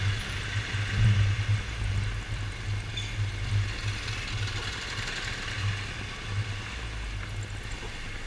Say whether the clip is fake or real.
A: real